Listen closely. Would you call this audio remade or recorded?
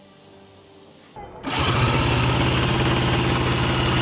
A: recorded